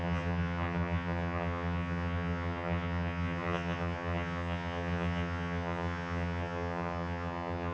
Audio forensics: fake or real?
fake